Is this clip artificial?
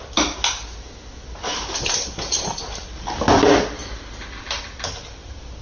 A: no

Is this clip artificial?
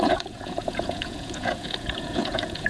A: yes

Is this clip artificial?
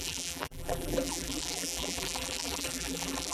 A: yes